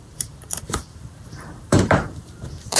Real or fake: fake